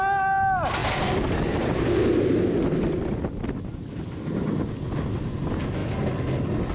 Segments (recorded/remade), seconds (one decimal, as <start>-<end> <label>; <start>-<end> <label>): 0.0-6.7 recorded